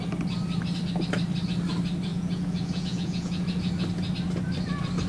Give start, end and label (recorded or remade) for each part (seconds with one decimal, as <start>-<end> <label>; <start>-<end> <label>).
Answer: 0.0-2.1 recorded; 2.1-3.7 remade; 3.7-5.1 recorded